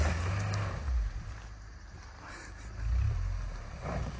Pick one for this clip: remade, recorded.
recorded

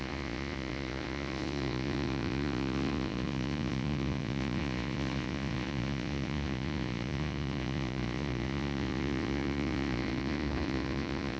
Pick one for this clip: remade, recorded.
remade